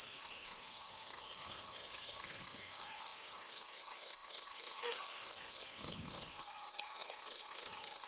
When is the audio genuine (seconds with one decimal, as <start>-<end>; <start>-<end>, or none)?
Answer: none